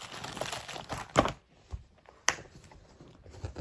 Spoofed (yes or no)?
no